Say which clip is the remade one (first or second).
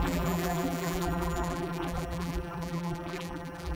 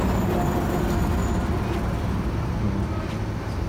first